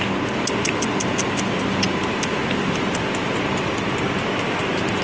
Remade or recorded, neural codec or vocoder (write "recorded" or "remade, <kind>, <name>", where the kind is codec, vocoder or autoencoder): recorded